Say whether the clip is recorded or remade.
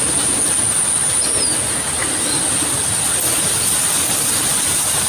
recorded